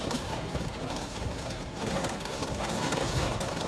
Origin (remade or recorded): remade